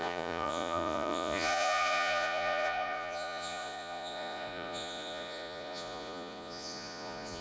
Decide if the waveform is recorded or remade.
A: remade